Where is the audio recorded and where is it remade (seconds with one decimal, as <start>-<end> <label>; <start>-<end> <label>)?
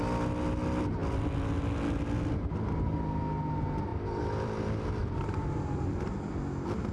0.0-3.9 recorded; 3.9-6.3 remade; 6.3-6.9 recorded